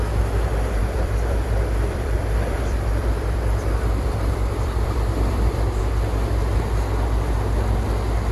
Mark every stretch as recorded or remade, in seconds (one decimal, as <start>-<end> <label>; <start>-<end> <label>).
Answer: 0.0-0.8 recorded; 0.8-5.8 remade; 5.8-8.3 recorded